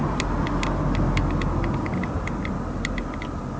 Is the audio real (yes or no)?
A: yes